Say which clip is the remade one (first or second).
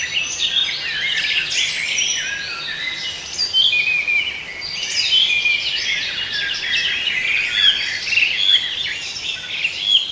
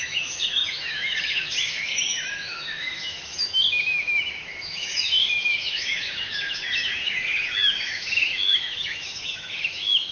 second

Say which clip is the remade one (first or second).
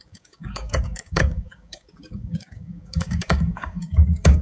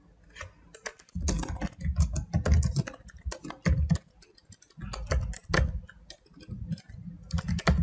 first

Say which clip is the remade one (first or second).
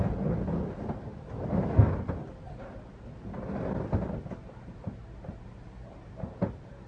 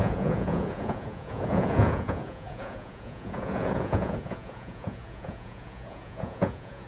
second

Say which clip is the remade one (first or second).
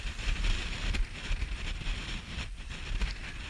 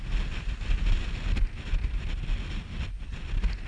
first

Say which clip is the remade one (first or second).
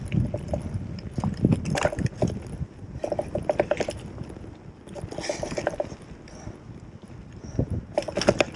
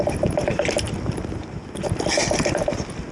second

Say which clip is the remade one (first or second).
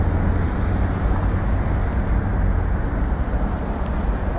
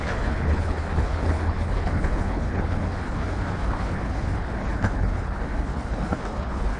second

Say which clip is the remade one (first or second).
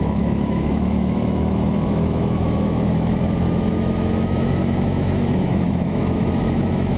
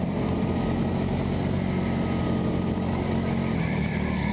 first